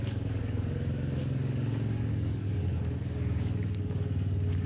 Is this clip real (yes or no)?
no